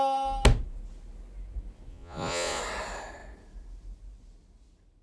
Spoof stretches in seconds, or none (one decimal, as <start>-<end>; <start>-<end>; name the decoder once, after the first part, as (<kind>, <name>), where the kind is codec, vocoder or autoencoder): 1.9-2.6 (vocoder, Vocos)